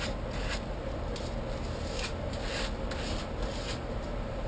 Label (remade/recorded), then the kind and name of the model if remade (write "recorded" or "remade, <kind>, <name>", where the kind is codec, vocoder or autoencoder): recorded